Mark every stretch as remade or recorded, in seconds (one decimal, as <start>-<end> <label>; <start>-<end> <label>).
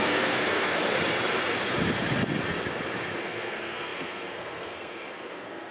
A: 0.0-0.8 remade; 0.8-3.2 recorded; 3.2-5.7 remade